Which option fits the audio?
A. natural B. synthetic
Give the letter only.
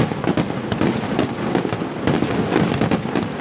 A